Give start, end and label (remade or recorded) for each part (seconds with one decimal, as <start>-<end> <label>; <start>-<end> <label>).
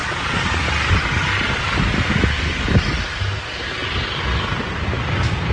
0.0-0.6 remade; 0.6-5.5 recorded